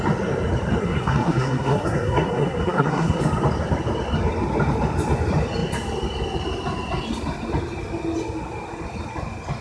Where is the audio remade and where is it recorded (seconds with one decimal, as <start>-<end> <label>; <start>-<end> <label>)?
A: 0.0-0.8 recorded; 0.8-3.2 remade; 3.2-9.6 recorded